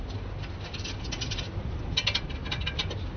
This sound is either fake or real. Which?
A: real